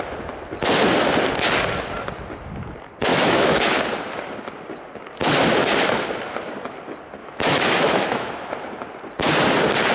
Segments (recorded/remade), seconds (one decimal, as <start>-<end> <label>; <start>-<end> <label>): 0.0-3.1 recorded; 3.1-3.8 remade; 3.8-7.2 recorded; 7.2-8.3 remade; 8.3-9.9 recorded